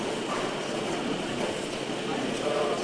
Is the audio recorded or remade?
remade